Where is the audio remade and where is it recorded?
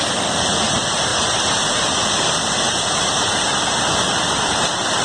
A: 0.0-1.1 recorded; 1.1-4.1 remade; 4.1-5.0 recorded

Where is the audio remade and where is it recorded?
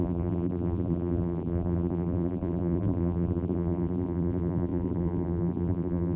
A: 0.0-6.2 remade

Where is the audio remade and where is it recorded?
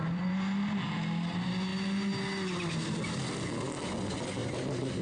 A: 0.0-4.4 recorded; 4.4-5.0 remade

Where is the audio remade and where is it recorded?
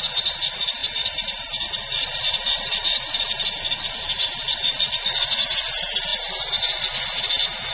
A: 0.0-0.8 recorded; 0.8-5.4 remade; 5.4-7.7 recorded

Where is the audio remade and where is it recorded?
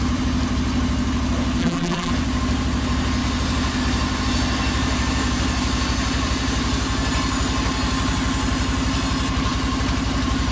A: 0.0-1.6 recorded; 1.6-2.1 remade; 2.1-10.5 recorded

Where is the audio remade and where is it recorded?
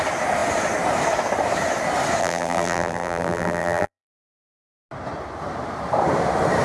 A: 0.0-2.2 recorded; 2.2-4.5 remade; 4.5-6.6 recorded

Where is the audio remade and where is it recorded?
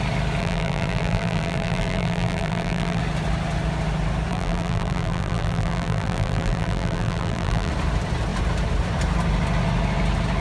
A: 0.0-0.4 recorded; 0.4-3.0 remade; 3.0-4.3 recorded; 4.3-7.7 remade; 7.7-10.4 recorded